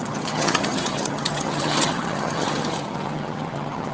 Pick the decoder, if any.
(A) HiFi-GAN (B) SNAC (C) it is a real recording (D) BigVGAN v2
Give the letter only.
A